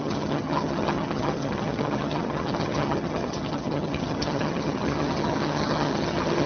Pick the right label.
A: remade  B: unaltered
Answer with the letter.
A